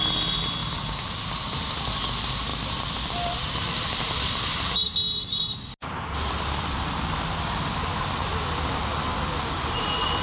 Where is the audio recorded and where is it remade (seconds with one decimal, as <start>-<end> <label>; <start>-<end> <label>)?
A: 0.0-2.5 recorded; 2.5-4.3 remade; 4.3-10.2 recorded